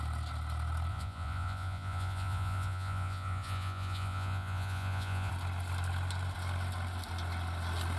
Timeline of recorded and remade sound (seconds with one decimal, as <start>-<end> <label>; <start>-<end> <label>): 0.0-0.9 recorded; 0.9-5.3 remade; 5.3-8.0 recorded